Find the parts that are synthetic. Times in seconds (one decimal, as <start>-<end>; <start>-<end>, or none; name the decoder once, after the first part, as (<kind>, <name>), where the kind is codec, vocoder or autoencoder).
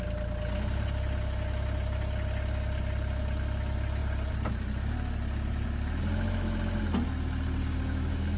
7.6-8.4 (codec, DAC)